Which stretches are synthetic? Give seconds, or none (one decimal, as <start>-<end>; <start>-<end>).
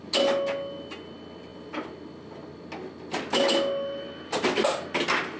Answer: none